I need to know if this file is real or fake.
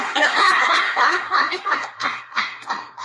fake